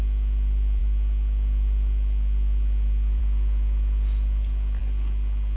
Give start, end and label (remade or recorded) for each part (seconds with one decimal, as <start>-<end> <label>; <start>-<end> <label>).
0.0-5.6 recorded